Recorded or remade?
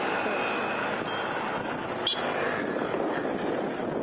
recorded